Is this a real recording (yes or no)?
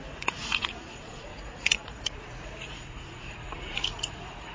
no